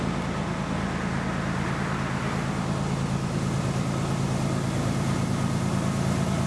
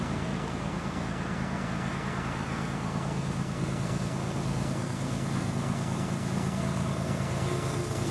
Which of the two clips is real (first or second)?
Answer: first